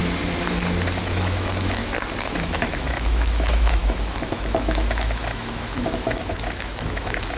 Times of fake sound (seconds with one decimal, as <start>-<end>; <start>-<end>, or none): 1.0-1.8; 2.4-7.4